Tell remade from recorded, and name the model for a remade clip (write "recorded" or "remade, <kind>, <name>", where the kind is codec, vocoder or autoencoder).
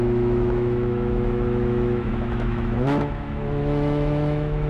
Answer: remade, autoencoder, DAC-VAE